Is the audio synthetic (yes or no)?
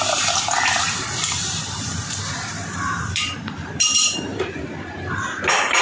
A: yes